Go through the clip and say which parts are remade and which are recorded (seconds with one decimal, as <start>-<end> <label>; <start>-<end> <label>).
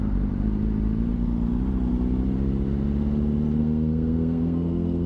0.0-3.6 recorded; 3.6-5.1 remade